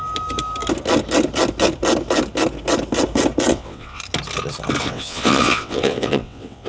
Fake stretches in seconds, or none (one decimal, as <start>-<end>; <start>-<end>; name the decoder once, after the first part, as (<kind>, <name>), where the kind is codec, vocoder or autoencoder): 3.5-4.0 (vocoder, WaveNeXt); 4.8-6.7